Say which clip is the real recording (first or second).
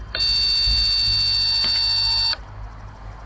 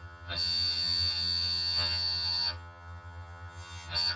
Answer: first